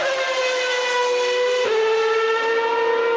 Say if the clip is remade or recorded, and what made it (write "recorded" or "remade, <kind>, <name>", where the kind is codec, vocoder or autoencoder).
recorded